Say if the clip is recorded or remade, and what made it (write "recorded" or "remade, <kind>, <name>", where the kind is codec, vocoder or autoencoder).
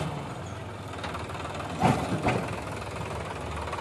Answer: recorded